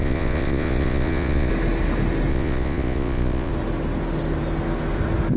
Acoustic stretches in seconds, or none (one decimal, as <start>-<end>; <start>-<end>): 1.5-2.3; 3.5-5.4